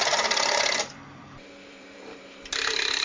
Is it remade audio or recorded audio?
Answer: remade